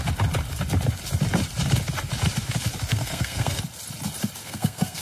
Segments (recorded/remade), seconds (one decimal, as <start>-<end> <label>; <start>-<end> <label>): 0.0-2.9 recorded; 2.9-3.6 remade; 3.6-4.4 recorded; 4.4-5.0 remade